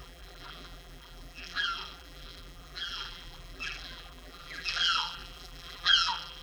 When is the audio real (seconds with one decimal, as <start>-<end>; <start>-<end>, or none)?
none